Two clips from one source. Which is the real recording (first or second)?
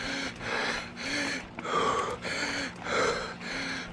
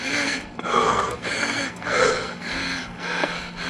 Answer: first